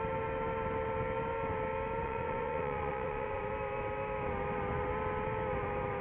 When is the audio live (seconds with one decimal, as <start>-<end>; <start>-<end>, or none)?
0.0-2.0; 3.5-6.0